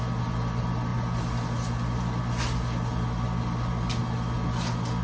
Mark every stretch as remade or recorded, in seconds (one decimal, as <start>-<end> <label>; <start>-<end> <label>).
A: 0.0-5.0 recorded